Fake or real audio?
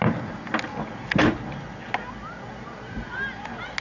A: real